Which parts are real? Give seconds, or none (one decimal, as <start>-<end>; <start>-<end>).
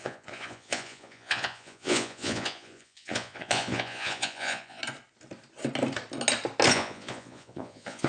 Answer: 4.8-6.7